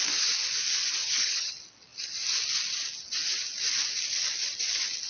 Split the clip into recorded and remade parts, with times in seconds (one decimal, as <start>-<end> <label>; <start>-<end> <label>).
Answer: 0.0-1.0 recorded; 1.0-1.5 remade; 1.5-5.1 recorded